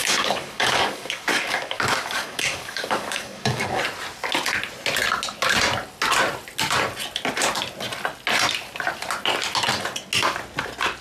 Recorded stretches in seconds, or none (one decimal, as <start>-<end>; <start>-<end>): 3.8-11.0

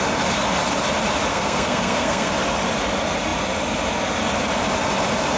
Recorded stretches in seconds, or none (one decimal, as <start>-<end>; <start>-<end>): 0.0-1.3; 2.3-5.4